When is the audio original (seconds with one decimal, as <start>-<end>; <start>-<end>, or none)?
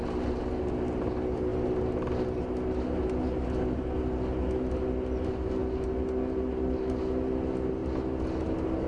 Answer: 0.0-8.9